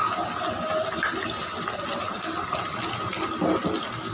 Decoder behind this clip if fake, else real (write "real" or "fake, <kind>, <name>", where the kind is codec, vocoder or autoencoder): real